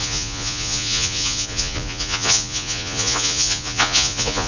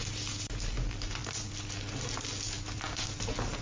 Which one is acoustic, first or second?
second